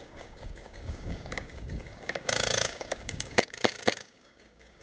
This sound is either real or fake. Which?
fake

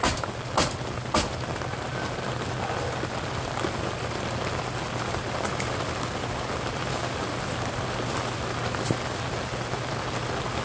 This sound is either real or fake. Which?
real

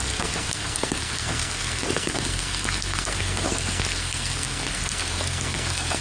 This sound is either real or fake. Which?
fake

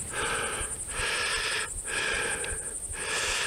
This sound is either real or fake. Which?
real